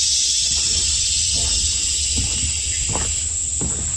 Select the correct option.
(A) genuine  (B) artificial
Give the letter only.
A